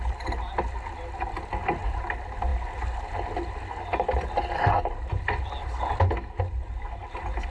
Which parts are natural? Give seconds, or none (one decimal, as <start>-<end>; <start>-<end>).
0.0-7.5